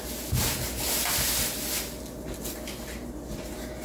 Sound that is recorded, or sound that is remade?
recorded